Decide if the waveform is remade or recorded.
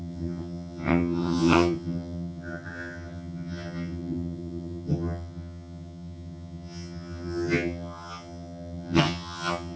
remade